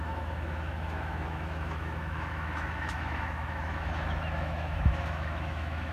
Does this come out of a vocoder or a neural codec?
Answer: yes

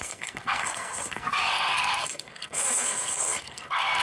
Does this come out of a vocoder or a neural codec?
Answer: yes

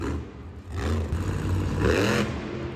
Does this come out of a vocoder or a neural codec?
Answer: no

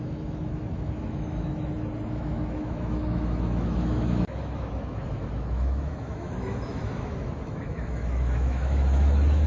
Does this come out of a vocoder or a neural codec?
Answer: yes